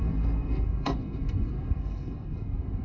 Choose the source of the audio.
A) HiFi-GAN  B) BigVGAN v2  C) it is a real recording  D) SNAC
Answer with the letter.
D